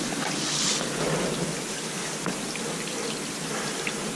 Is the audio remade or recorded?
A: recorded